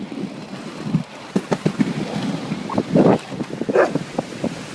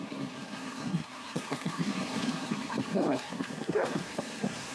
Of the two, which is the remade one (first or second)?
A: second